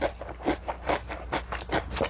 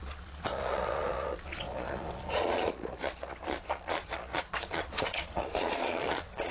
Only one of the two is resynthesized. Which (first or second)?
second